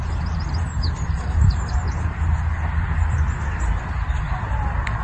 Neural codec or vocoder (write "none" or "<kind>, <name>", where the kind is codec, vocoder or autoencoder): none